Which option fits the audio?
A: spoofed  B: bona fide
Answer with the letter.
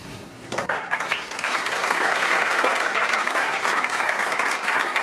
A